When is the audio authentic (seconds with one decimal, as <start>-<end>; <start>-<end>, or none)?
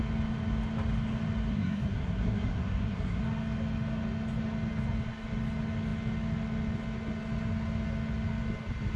0.0-1.5; 3.2-9.0